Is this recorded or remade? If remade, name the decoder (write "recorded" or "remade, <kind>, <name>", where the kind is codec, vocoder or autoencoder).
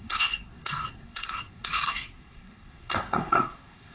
remade, codec, SNAC